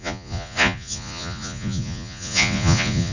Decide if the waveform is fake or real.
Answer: fake